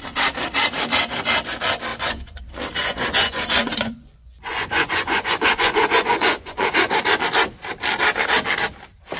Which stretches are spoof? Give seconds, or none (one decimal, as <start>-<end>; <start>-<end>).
1.9-2.4; 2.8-7.0